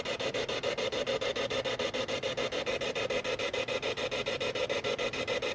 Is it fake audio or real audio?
real